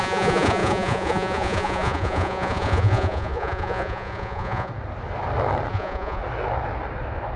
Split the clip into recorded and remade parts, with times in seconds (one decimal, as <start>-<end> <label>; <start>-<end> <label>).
0.0-4.7 remade; 4.7-5.7 recorded; 5.7-6.2 remade; 6.2-7.4 recorded